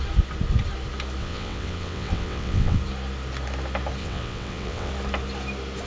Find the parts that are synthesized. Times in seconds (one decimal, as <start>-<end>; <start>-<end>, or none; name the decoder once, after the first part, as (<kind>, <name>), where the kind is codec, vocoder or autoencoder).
1.2-2.8 (vocoder, WaveNeXt); 4.0-4.9